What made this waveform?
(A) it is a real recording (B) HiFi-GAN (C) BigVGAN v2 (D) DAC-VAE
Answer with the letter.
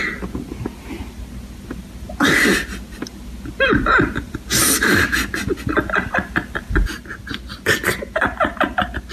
A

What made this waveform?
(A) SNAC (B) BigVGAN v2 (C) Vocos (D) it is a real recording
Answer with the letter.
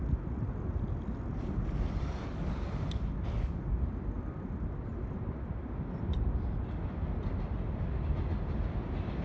D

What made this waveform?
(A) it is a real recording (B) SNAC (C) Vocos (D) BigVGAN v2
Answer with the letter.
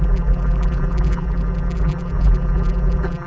D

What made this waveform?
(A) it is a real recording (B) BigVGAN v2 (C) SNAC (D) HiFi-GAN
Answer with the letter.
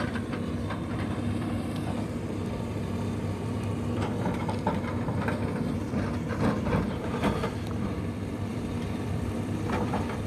B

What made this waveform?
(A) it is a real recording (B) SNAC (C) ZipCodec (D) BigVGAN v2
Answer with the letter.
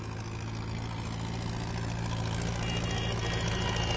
A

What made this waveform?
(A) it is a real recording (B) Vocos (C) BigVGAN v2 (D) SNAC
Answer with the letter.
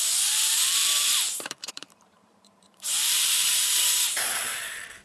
C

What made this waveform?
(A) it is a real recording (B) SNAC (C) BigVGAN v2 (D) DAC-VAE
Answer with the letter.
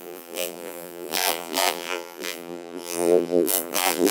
C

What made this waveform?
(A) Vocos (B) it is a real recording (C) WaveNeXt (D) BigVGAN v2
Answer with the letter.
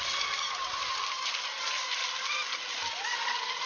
B